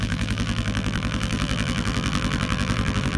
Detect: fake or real fake